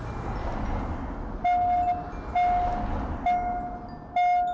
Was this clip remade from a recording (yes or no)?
no